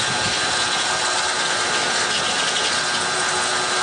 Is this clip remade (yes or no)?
no